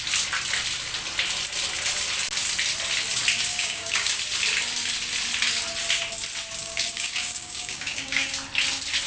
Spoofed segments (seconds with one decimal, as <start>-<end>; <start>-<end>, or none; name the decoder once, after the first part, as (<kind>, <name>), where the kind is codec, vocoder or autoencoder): 3.5-4.2 (codec, DAC); 6.6-8.3